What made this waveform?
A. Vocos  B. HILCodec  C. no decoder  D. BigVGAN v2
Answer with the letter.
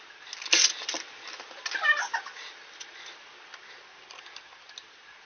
C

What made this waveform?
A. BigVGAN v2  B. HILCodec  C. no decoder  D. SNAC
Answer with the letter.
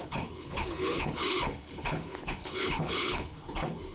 B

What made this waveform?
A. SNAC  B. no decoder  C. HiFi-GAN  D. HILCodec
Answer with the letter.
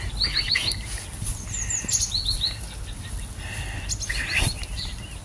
B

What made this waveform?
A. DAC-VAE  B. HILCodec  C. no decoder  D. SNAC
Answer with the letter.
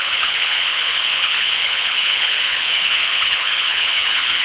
B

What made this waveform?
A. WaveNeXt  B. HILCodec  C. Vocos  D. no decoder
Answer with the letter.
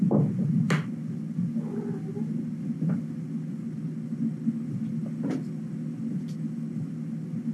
D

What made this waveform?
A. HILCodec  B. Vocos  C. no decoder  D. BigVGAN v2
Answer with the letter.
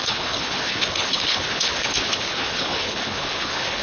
A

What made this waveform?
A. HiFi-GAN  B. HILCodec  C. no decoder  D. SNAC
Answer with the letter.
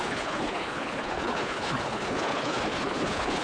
B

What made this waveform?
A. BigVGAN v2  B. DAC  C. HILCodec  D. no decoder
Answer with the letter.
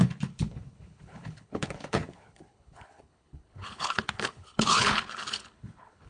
C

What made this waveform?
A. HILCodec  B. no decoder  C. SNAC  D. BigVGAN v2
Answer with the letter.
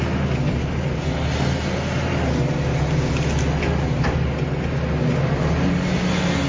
B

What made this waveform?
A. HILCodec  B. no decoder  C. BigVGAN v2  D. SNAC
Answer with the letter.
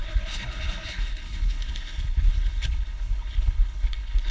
A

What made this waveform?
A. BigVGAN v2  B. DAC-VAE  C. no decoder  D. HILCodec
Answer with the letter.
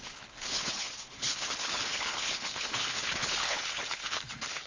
D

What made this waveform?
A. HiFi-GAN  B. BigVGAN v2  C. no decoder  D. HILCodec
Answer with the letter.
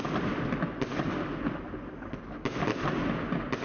C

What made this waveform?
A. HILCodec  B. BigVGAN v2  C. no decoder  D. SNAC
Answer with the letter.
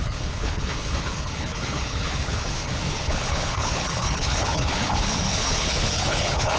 A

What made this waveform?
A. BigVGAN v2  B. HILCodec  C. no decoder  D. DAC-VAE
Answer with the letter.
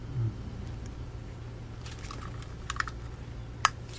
C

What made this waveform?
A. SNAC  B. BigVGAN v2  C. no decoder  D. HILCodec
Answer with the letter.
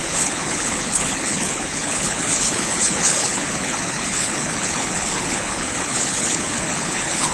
D